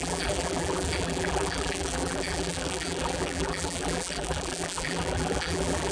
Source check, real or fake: fake